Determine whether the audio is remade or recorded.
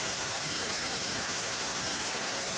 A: remade